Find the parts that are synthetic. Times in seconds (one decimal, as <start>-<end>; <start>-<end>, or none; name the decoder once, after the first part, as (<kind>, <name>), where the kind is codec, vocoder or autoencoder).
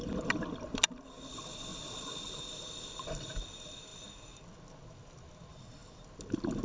none